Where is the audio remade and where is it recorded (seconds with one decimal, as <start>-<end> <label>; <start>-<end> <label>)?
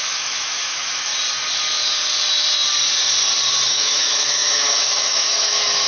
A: 0.0-1.1 remade; 1.1-3.7 recorded; 3.7-5.9 remade